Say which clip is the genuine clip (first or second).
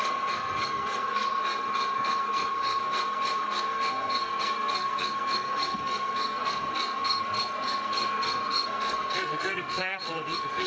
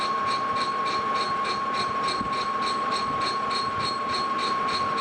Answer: second